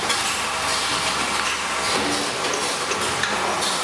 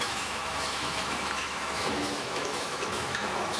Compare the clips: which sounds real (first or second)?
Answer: first